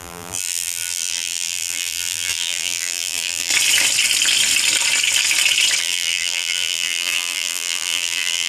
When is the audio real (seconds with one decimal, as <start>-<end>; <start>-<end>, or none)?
3.5-5.8